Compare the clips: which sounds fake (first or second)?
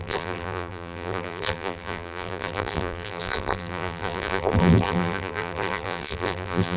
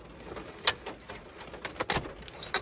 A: first